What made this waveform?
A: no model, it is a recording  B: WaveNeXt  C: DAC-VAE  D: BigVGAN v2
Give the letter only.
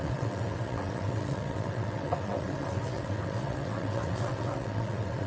B